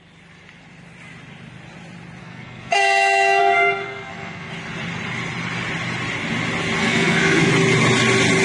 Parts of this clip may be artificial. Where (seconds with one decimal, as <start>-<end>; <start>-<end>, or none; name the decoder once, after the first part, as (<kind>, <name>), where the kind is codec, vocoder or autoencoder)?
2.2-2.8 (codec, SNAC); 3.4-4.5; 6.8-7.5